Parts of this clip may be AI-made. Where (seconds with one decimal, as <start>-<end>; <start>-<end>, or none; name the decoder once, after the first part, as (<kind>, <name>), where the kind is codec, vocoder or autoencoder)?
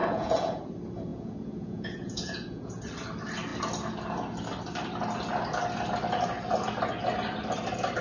0.0-0.7 (vocoder, Vocos); 1.1-2.8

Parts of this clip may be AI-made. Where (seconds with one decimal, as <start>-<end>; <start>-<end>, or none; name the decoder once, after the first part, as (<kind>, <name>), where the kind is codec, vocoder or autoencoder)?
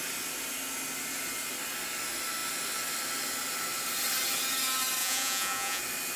5.0-5.8 (vocoder, Vocos)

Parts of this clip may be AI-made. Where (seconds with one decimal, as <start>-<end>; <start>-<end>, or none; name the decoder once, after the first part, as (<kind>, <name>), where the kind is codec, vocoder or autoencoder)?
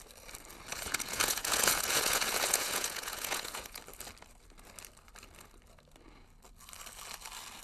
0.7-3.8 (vocoder, Vocos)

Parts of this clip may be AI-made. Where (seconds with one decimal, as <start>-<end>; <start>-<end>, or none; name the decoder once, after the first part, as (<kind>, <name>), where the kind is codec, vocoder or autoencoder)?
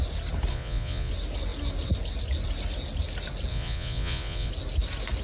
0.5-1.1 (vocoder, Vocos); 3.5-4.5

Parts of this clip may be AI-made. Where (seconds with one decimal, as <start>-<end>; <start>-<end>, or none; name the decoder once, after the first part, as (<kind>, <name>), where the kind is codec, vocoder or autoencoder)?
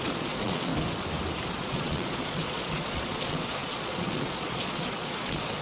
0.0-0.7 (vocoder, Vocos); 1.5-5.6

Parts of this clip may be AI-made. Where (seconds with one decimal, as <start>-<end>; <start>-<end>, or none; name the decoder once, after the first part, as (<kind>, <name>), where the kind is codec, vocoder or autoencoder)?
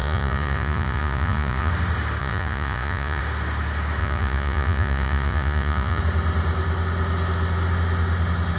0.0-1.7 (vocoder, Vocos); 2.2-3.2; 4.0-6.0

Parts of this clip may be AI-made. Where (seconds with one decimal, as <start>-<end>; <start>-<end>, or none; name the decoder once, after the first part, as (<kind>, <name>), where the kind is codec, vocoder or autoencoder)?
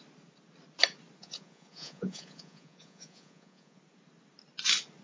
1.2-3.8 (vocoder, Vocos)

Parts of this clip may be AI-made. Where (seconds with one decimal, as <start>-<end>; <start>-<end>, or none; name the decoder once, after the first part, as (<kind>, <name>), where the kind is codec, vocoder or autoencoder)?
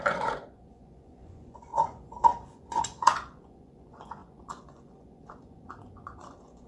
0.0-6.7 (vocoder, Vocos)